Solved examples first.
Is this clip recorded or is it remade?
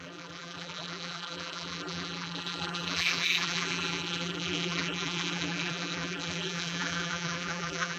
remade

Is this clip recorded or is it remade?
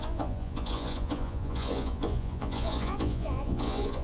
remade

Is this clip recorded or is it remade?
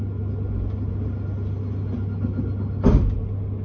recorded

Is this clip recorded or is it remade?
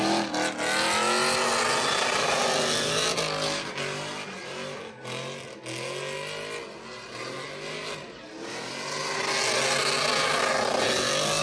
recorded